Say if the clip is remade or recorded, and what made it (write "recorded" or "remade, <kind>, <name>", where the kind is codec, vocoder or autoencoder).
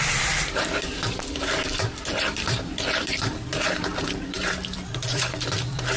remade, vocoder, BigVGAN v2